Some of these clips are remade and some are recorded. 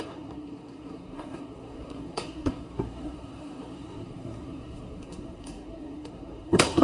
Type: remade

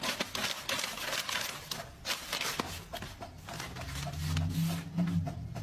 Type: recorded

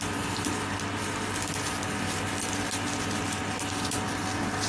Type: recorded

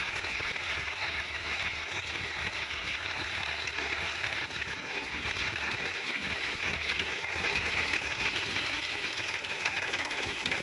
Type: remade